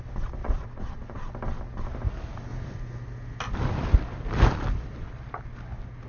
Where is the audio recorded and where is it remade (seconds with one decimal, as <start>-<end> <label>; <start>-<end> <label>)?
0.0-0.4 recorded; 0.4-1.3 remade; 1.3-6.1 recorded